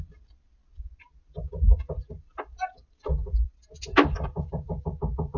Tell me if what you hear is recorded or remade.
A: recorded